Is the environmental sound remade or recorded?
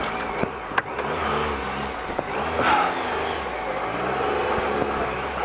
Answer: recorded